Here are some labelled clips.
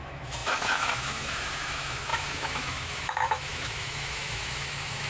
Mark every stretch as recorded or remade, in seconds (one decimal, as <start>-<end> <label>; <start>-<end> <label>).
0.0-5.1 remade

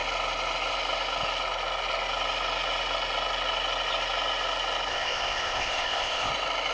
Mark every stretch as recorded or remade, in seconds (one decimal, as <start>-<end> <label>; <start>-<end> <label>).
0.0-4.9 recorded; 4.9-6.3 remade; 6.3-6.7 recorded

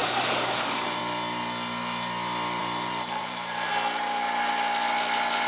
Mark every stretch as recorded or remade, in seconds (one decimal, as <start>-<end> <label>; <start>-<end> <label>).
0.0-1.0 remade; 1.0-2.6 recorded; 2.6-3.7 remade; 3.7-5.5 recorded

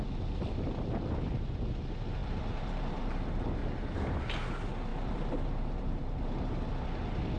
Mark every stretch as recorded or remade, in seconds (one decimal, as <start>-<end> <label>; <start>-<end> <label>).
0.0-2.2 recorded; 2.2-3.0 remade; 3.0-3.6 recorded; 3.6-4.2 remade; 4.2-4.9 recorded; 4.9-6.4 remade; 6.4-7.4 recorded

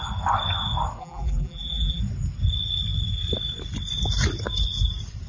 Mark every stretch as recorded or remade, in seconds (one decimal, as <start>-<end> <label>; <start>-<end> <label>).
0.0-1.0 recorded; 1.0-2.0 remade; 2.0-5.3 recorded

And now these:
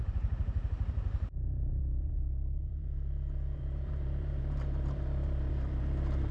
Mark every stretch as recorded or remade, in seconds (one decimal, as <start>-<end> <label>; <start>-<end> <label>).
0.0-6.3 remade